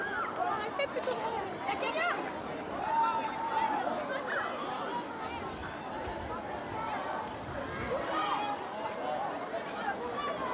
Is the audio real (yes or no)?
yes